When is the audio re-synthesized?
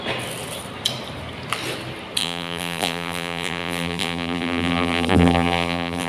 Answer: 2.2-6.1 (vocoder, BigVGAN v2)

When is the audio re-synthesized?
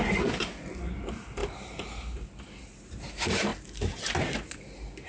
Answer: 1.4-2.3 (vocoder, BigVGAN v2); 3.5-4.5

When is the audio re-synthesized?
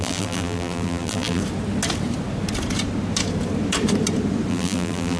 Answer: 0.0-1.4 (vocoder, BigVGAN v2); 4.5-5.2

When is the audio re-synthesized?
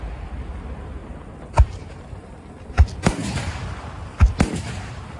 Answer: 1.0-2.4 (vocoder, BigVGAN v2)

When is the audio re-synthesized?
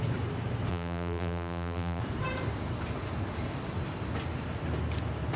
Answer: 0.7-2.0 (vocoder, BigVGAN v2)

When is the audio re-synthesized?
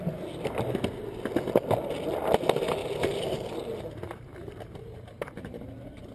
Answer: 2.8-6.1 (vocoder, BigVGAN v2)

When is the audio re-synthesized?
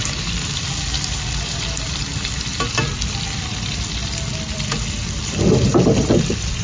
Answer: 4.0-4.7 (vocoder, BigVGAN v2)